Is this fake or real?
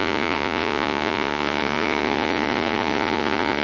fake